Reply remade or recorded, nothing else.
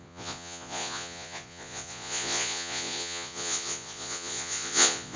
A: remade